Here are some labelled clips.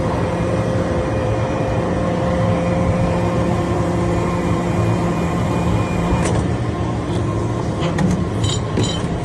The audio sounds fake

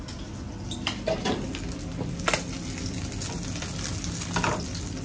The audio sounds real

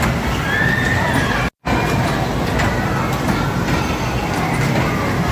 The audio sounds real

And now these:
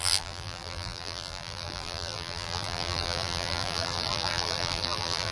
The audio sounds fake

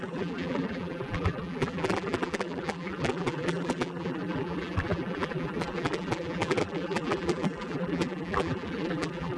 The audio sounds fake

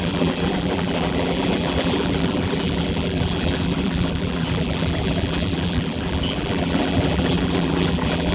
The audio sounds fake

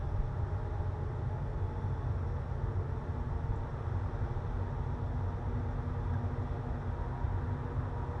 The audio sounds real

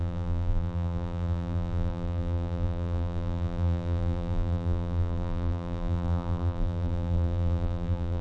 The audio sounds fake